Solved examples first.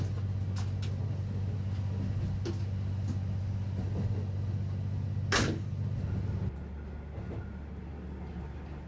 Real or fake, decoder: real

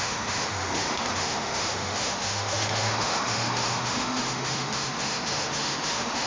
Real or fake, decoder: fake, autoencoder, DAC-VAE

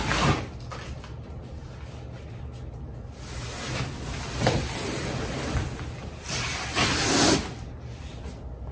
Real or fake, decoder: real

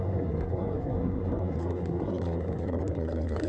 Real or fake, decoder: fake, codec, SNAC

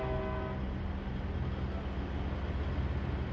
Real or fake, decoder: real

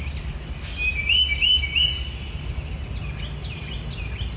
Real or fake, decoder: real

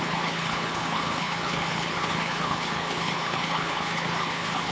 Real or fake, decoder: fake, codec, HILCodec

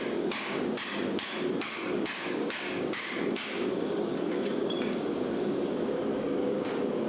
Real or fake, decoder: fake, codec, DAC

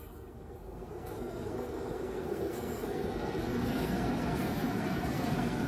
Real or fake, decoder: fake, codec, SNAC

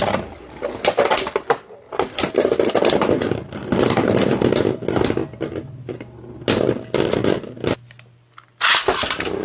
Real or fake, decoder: real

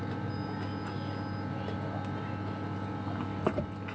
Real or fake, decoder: real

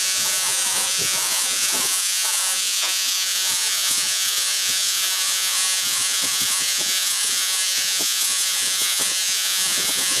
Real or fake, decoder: fake, vocoder, Vocos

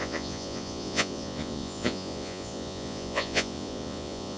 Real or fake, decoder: fake, vocoder, Vocos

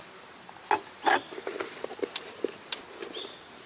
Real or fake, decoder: real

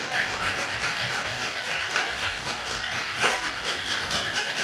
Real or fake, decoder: fake, codec, DAC